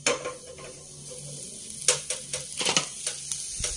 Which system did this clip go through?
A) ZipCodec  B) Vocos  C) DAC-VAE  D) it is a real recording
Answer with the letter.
D